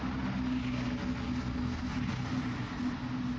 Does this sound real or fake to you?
real